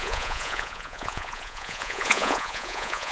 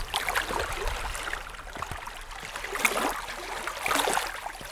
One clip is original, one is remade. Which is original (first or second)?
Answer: second